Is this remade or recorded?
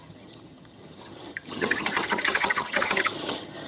remade